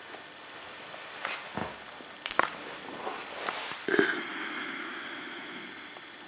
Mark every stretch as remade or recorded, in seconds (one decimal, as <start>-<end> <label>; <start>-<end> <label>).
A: 0.0-4.3 recorded; 4.3-5.6 remade; 5.6-6.3 recorded